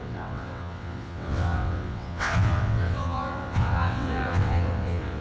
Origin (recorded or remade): remade